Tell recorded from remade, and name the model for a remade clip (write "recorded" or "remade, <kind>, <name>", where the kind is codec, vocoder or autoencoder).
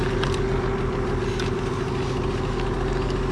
recorded